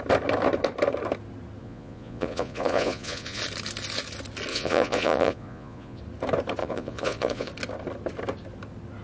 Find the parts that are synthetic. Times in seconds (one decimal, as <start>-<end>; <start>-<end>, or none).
1.6-3.4; 4.5-6.0; 6.6-7.5